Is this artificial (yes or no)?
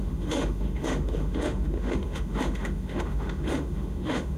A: yes